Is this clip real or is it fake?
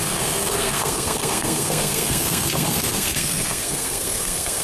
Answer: fake